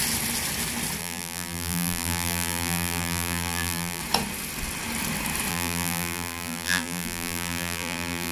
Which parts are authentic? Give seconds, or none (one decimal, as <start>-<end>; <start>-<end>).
0.0-1.0; 4.0-5.5